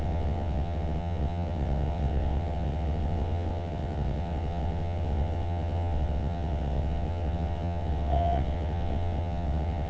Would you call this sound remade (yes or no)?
yes